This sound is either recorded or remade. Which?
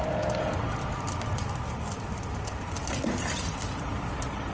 recorded